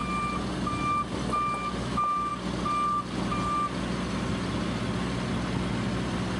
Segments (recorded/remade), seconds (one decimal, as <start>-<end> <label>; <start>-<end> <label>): 0.0-1.8 recorded; 1.8-2.3 remade; 2.3-6.4 recorded